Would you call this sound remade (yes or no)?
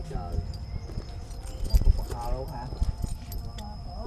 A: no